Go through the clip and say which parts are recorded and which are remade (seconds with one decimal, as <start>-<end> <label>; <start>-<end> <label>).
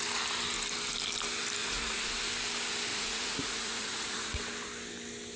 0.0-1.6 recorded; 1.6-2.2 remade; 2.2-2.9 recorded; 2.9-4.4 remade; 4.4-5.4 recorded